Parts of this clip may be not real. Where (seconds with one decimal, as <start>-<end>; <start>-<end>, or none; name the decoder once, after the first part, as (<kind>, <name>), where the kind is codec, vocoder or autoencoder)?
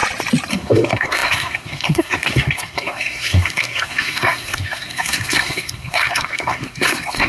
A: 0.5-7.3 (codec, SNAC)